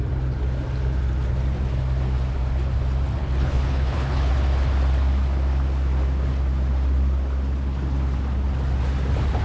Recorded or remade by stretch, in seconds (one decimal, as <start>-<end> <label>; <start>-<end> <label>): 0.0-3.2 recorded; 3.2-4.3 remade; 4.3-9.4 recorded

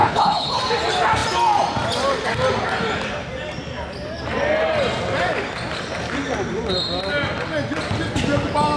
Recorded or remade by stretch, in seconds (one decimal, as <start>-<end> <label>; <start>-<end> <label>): 0.0-0.6 remade; 0.6-8.8 recorded

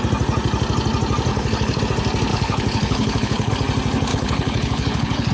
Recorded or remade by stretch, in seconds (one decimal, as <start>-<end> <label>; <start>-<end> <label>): 0.0-1.3 recorded; 1.3-1.8 remade; 1.8-2.3 recorded; 2.3-3.5 remade; 3.5-4.1 recorded; 4.1-5.3 remade

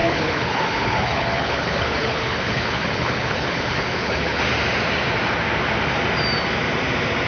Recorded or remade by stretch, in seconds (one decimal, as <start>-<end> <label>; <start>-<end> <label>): 0.0-4.4 remade; 4.4-7.3 recorded

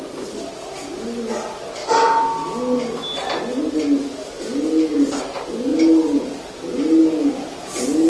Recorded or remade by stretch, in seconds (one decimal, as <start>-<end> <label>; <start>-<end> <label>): 0.0-8.1 recorded